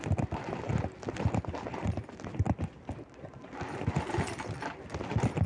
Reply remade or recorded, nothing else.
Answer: recorded